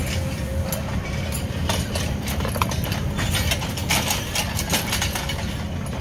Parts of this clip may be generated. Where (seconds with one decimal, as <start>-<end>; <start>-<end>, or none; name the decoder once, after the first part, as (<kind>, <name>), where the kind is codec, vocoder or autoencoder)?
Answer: 0.0-3.3 (vocoder, BigVGAN v2); 3.8-5.2